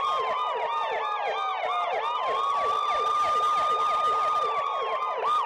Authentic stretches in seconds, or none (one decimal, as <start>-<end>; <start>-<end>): 0.0-5.5